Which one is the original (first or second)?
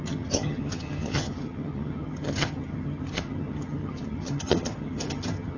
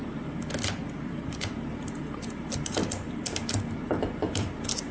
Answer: second